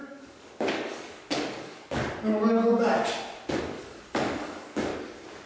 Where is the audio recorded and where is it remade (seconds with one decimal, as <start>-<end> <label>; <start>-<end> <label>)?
0.0-2.0 remade; 2.0-3.5 recorded; 3.5-4.9 remade; 4.9-5.5 recorded